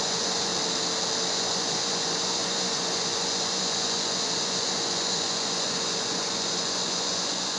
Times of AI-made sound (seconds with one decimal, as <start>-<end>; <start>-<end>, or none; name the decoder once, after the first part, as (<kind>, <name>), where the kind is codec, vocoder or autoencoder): 0.0-0.5 (vocoder, Vocos); 1.3-7.6